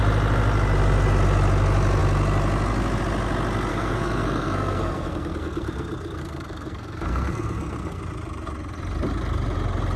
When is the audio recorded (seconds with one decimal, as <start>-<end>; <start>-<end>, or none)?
0.0-3.7; 8.0-10.0